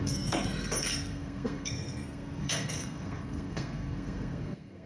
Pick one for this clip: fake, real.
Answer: fake